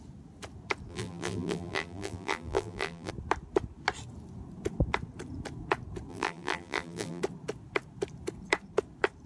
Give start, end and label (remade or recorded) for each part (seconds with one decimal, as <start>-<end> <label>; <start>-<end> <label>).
0.0-0.9 recorded; 0.9-3.1 remade; 3.1-6.1 recorded; 6.1-7.2 remade; 7.2-9.3 recorded